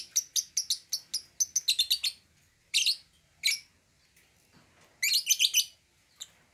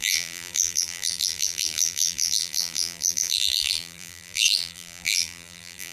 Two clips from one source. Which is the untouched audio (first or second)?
first